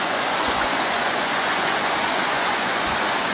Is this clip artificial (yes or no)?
yes